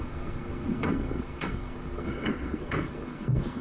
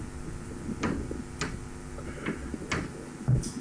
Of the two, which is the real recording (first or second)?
second